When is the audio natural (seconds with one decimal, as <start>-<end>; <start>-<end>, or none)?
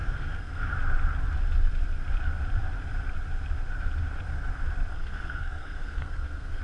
0.7-4.9